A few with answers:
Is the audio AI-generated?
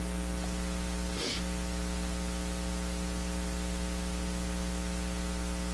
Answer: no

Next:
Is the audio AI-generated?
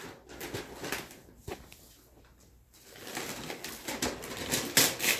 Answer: no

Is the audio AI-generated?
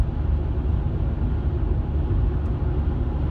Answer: no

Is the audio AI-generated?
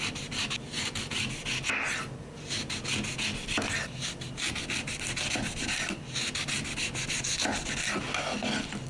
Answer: no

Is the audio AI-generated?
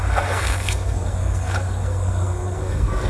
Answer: yes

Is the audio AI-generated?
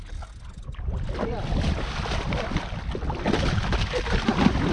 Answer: no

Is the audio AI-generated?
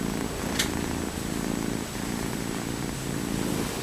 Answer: no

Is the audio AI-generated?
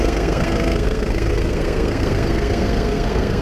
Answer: yes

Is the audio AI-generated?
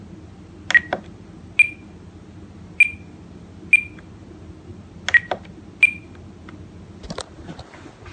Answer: no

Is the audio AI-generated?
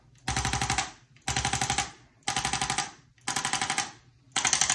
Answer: no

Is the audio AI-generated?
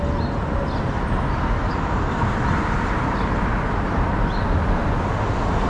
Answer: no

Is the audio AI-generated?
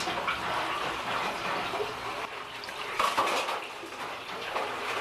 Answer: no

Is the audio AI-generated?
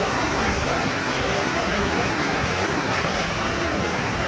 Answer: yes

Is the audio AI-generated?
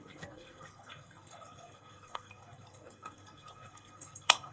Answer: yes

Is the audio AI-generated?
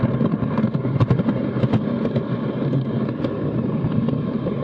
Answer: no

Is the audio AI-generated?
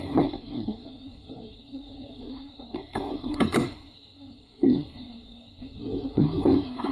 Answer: yes